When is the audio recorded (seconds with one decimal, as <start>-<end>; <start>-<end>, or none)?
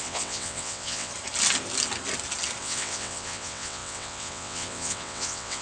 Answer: 1.1-2.6